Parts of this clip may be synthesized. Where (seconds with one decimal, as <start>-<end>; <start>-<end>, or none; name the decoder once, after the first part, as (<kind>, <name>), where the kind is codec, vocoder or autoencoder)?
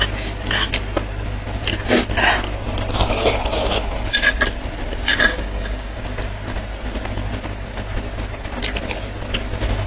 5.1-6.0 (codec, DAC)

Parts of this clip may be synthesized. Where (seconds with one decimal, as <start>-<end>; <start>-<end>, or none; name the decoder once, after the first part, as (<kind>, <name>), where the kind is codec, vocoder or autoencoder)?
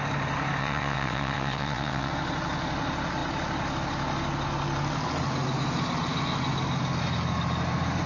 0.6-2.1 (vocoder, WaveNeXt)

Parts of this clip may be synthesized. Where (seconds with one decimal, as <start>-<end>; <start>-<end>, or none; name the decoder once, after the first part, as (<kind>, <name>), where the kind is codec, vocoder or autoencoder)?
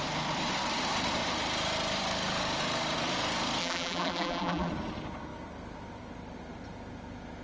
3.6-4.7 (vocoder, BigVGAN v2)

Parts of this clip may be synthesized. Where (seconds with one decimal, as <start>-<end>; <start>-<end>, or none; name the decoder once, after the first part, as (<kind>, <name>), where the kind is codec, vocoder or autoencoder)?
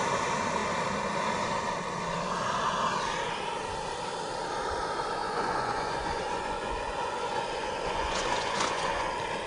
5.2-9.1 (vocoder, Vocos)